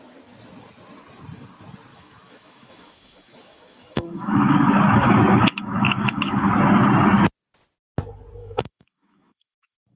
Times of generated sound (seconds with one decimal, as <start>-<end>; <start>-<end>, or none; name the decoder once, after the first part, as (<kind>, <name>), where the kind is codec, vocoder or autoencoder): 1.9-6.5 (autoencoder, DAC-VAE); 8.4-10.0